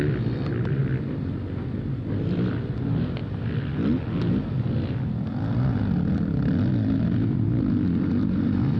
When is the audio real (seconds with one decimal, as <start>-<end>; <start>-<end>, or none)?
0.0-8.8